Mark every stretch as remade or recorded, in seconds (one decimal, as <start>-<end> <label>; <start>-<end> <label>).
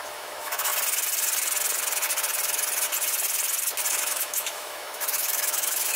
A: 0.0-0.7 remade; 0.7-3.9 recorded; 3.9-6.0 remade